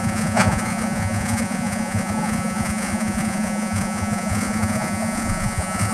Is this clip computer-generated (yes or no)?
yes